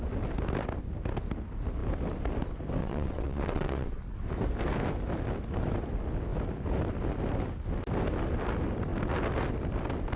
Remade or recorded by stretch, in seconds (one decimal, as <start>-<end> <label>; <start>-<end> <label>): 0.0-2.8 recorded; 2.8-4.0 remade; 4.0-10.2 recorded